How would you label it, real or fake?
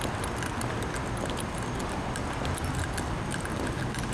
real